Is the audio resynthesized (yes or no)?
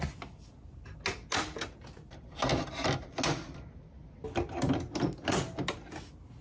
no